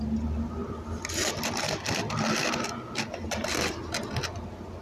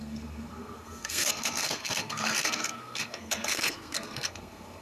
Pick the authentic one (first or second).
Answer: first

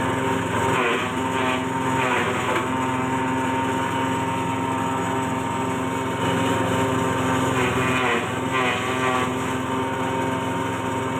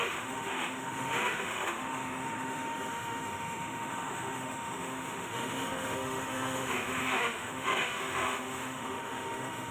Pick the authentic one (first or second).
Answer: first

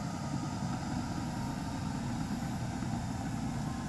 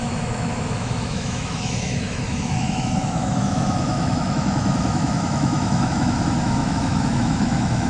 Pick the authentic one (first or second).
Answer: first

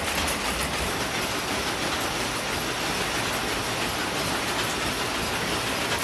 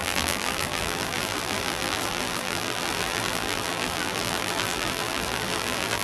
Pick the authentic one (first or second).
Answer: first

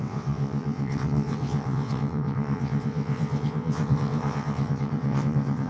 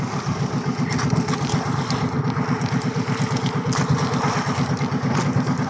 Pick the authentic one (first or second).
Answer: second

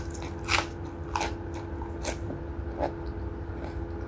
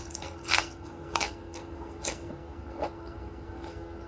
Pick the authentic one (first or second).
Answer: first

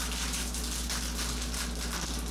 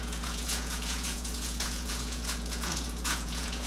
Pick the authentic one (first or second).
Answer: first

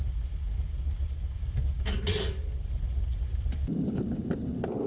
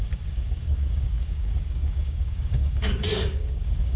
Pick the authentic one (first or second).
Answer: first